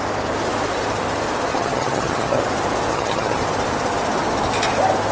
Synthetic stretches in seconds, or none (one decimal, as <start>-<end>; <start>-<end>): 1.5-2.4; 2.9-3.4